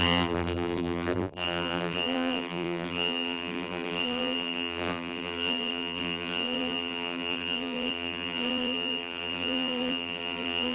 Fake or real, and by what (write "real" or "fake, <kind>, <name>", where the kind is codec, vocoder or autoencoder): fake, vocoder, BigVGAN v2